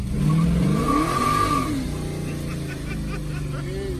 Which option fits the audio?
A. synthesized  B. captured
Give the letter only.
B